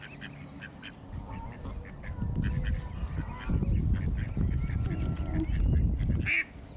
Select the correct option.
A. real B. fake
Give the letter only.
A